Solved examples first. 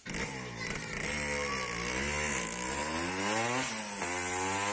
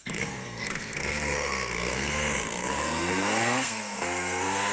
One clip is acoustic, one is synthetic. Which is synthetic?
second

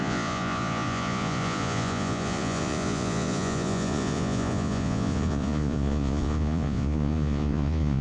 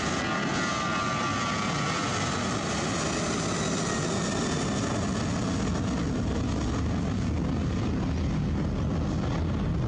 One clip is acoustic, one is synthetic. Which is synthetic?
first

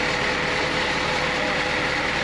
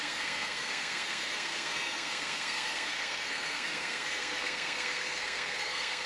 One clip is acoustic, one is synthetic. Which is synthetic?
second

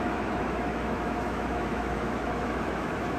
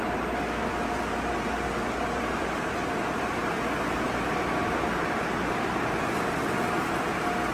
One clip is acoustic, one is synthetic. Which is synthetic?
first